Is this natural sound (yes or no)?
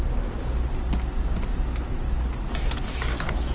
yes